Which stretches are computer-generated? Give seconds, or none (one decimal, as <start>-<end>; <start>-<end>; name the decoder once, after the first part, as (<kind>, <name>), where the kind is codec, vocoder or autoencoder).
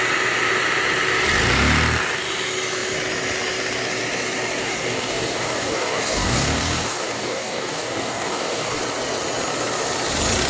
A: 4.6-8.8 (codec, DAC)